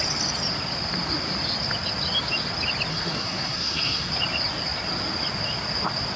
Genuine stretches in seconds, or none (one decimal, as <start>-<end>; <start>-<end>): 0.0-2.9; 4.1-6.2